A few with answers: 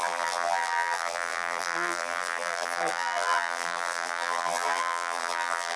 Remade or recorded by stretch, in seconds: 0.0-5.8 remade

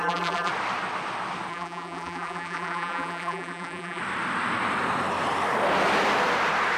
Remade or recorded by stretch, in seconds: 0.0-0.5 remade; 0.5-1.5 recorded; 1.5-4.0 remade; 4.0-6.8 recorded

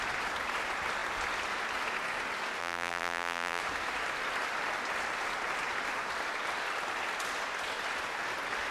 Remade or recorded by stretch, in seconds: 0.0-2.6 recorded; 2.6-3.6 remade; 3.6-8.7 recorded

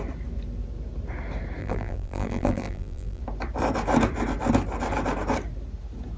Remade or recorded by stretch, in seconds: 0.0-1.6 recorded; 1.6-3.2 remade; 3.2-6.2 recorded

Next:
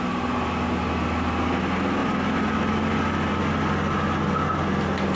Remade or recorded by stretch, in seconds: 0.0-5.2 recorded

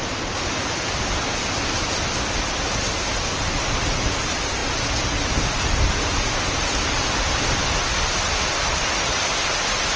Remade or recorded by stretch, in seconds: 0.0-10.0 recorded

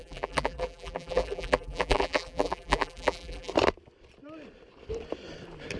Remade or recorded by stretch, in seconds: 0.0-3.5 remade; 3.5-5.8 recorded